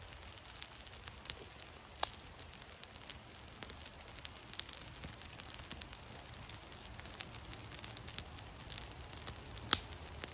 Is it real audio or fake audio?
real